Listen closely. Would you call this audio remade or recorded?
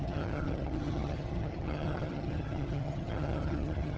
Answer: remade